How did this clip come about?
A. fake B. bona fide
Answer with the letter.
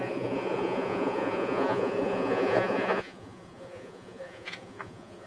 A